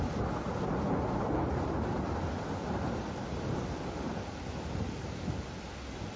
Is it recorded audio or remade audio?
recorded